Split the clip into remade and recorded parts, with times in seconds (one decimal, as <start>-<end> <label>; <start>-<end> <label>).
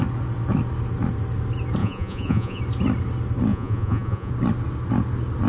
0.0-1.8 recorded; 1.8-2.6 remade; 2.6-3.5 recorded; 3.5-4.3 remade; 4.3-5.5 recorded